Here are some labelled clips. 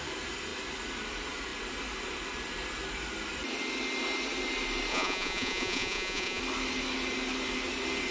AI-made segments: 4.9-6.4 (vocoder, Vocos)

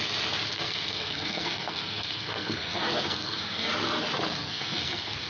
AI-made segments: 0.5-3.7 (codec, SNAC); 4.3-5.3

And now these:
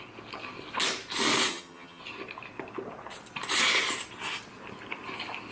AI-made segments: 1.5-2.0 (vocoder, HiFi-GAN)